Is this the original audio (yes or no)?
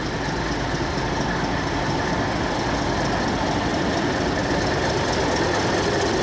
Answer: yes